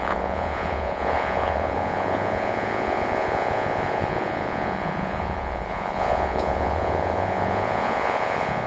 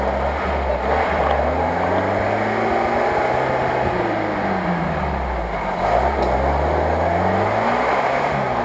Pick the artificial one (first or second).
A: first